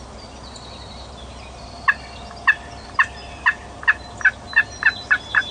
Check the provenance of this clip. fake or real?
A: real